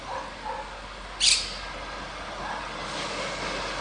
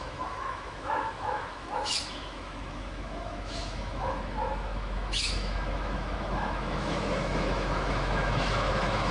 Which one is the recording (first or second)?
first